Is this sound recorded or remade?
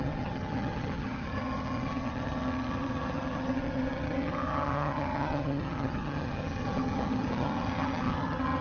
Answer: remade